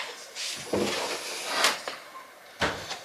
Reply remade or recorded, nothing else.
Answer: recorded